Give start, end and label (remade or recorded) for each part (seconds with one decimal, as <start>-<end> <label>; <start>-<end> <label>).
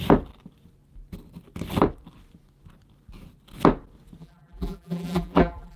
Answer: 0.0-4.2 recorded; 4.2-5.8 remade